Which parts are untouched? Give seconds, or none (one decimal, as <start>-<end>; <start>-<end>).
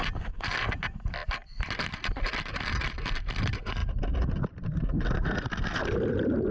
0.0-6.5